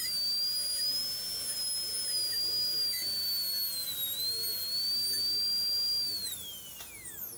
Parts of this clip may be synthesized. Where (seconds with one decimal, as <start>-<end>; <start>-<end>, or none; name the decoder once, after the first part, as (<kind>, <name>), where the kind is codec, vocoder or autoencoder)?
none